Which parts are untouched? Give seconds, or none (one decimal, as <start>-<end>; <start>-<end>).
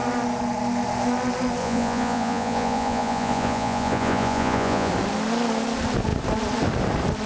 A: 0.0-1.6; 4.9-7.3